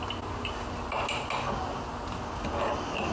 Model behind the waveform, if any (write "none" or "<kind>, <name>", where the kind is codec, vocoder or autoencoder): none